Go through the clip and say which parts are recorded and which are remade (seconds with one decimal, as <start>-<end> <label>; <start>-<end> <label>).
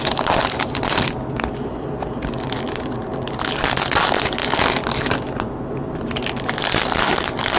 0.0-7.6 recorded